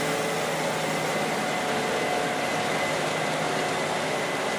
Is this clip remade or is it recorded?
recorded